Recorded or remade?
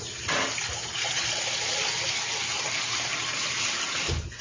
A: recorded